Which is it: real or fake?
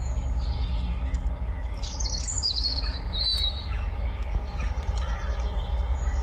fake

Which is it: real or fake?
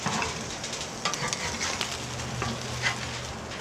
real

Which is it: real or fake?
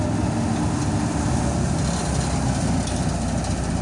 real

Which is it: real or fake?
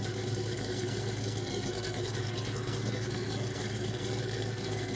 fake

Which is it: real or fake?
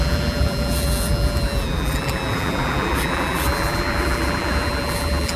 fake